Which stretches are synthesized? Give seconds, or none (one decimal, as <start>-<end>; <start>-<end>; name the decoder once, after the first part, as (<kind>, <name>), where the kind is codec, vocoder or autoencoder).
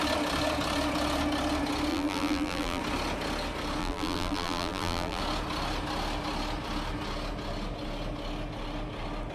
1.9-2.8 (vocoder, BigVGAN v2); 3.8-5.2